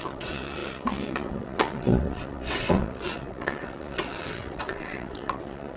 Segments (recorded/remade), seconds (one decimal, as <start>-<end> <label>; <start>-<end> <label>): 0.0-5.8 remade